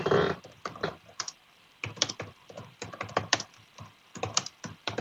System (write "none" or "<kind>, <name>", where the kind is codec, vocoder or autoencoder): vocoder, BigVGAN v2